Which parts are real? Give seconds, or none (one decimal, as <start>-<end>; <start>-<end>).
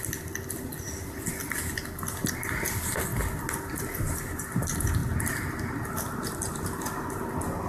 0.0-7.7